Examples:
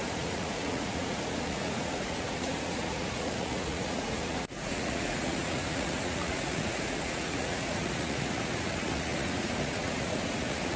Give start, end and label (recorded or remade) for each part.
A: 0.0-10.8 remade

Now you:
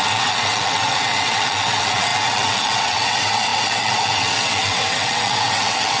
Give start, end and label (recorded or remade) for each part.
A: 0.0-6.0 remade

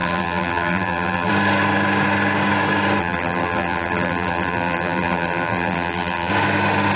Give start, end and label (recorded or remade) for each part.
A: 0.0-1.3 remade; 1.3-3.0 recorded; 3.0-6.3 remade; 6.3-7.0 recorded

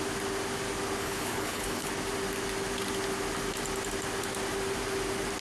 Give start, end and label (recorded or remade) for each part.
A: 0.0-1.0 recorded; 1.0-1.9 remade; 1.9-5.4 recorded

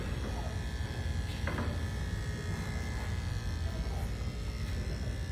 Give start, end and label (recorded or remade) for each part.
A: 0.0-5.3 recorded

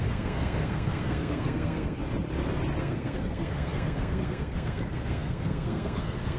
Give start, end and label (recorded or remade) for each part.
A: 0.0-2.0 remade; 2.0-2.8 recorded; 2.8-6.4 remade

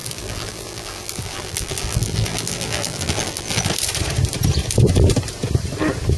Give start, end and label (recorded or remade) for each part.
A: 0.0-3.7 remade; 3.7-6.2 recorded